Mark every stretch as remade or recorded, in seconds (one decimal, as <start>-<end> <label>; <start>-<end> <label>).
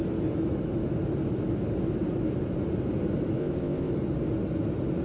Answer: 0.0-3.4 recorded; 3.4-3.9 remade; 3.9-5.0 recorded